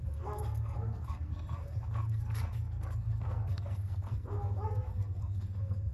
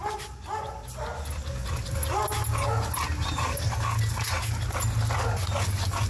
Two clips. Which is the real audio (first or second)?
second